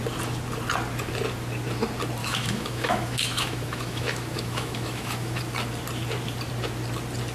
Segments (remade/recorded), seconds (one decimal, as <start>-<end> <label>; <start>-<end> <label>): 0.0-2.2 recorded; 2.2-5.4 remade; 5.4-7.3 recorded